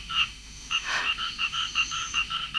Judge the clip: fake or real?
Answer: fake